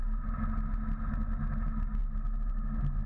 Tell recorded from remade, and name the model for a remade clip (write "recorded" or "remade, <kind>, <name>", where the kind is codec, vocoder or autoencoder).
recorded